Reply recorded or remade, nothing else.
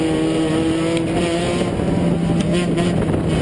recorded